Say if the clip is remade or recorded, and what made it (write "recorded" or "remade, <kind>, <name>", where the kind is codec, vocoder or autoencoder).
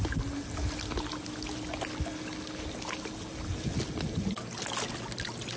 recorded